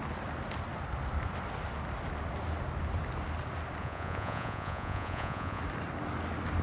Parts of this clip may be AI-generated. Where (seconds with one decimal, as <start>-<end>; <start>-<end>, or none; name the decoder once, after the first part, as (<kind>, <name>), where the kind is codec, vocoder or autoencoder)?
3.8-5.6 (vocoder, Vocos)